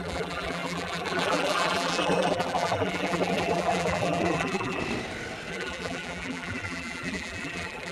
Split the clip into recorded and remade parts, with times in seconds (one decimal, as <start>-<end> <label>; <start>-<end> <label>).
0.0-4.8 remade; 4.8-5.5 recorded; 5.5-7.9 remade